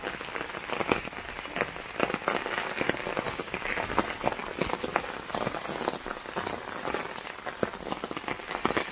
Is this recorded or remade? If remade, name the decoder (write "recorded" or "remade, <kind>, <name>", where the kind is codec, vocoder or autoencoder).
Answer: recorded